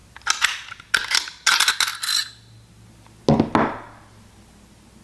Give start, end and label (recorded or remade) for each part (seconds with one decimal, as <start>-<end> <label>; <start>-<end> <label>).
0.0-5.0 recorded